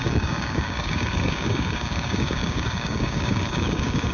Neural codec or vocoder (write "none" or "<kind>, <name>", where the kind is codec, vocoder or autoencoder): codec, DAC